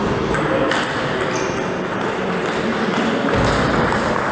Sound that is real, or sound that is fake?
real